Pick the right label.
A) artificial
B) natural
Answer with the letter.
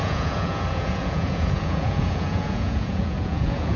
A